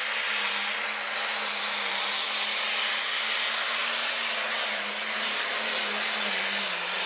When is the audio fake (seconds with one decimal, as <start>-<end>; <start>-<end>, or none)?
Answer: none